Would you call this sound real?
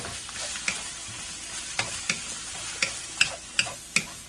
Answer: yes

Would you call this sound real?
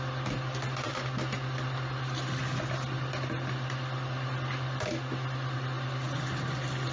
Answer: yes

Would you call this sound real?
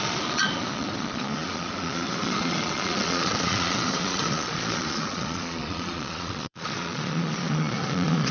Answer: no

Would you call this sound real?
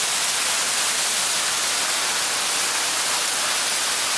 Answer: yes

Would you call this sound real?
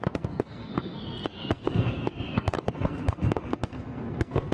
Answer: no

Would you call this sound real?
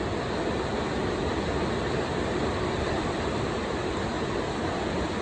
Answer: yes